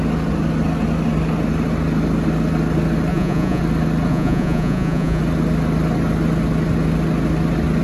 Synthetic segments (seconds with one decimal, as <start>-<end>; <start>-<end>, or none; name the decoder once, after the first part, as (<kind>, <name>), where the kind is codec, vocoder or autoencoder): 3.1-3.6 (vocoder, Vocos); 4.1-5.2